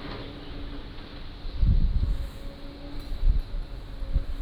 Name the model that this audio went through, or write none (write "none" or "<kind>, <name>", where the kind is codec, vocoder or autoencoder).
none